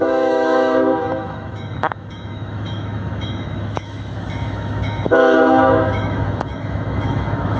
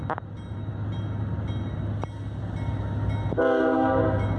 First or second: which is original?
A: second